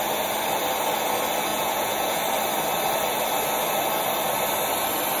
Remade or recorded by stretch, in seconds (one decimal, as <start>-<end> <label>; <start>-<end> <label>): 0.0-1.5 recorded; 1.5-2.2 remade; 2.2-5.2 recorded